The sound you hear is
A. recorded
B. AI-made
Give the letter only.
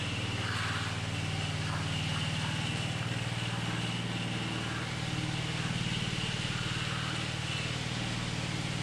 A